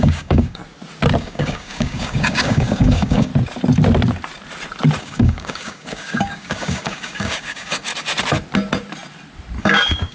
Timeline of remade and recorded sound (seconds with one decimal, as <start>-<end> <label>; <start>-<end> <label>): 0.0-0.6 remade; 0.6-1.2 recorded; 1.2-3.3 remade; 3.3-5.0 recorded; 5.0-7.9 remade; 7.9-9.6 recorded; 9.6-10.1 remade